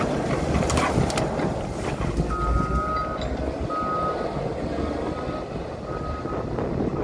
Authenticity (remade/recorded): recorded